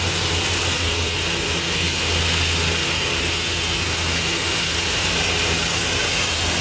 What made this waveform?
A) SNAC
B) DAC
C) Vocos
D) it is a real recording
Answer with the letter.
D